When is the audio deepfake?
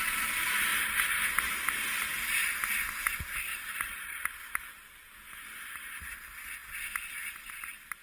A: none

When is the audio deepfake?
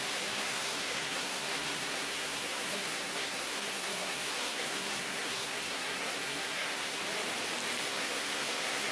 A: 0.0-7.0 (codec, SNAC); 7.8-8.9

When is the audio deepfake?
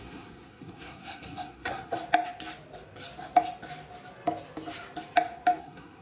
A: 0.0-2.0 (codec, SNAC); 5.6-6.0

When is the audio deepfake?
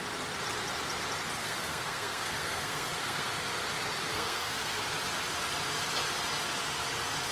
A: 1.4-3.3 (codec, SNAC); 4.1-4.8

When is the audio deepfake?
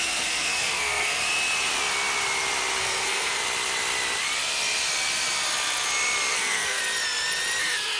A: 0.0-1.2 (codec, SNAC); 2.8-3.4; 6.3-6.8; 7.6-8.0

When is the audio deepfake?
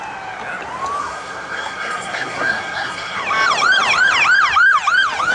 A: 1.0-3.2 (codec, SNAC)